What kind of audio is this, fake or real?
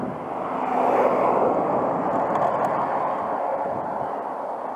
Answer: real